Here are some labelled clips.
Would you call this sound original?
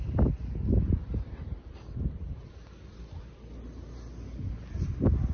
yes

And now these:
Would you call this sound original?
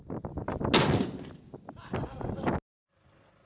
yes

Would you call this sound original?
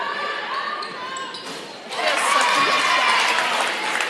yes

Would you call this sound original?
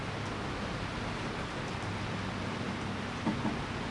yes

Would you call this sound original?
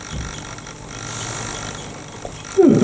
yes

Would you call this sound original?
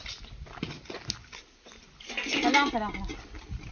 yes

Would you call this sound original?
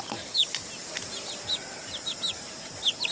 yes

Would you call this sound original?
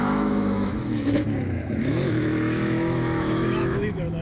no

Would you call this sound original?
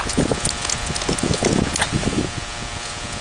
yes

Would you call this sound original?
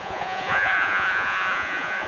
no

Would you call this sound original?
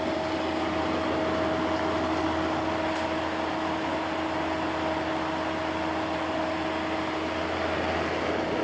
yes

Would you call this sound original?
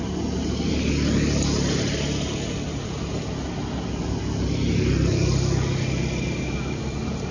yes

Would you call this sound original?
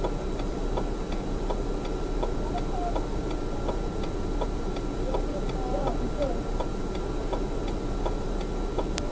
yes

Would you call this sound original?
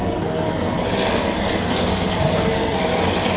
no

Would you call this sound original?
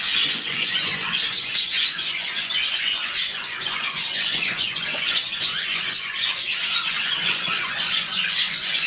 no